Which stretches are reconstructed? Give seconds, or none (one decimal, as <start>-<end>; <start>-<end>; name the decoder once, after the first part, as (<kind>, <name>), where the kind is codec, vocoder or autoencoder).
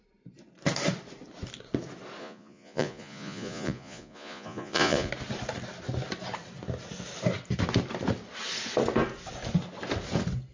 2.2-5.1 (vocoder, Vocos)